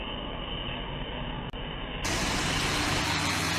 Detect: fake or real real